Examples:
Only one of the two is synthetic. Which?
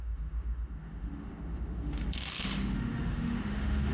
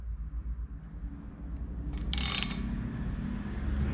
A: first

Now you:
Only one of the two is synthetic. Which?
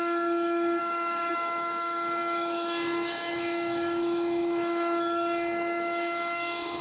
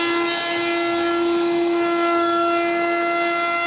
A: first